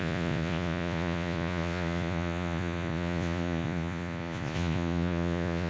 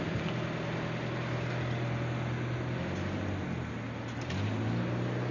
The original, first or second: second